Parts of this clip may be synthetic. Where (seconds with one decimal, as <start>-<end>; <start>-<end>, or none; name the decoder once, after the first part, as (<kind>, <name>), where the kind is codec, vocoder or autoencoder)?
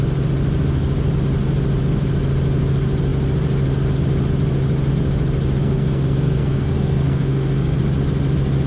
5.6-7.8 (codec, SNAC)